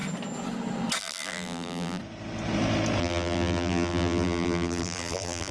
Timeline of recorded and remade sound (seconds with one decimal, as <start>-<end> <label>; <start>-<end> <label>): 0.0-1.0 recorded; 1.0-2.0 remade; 2.0-3.0 recorded; 3.0-5.5 remade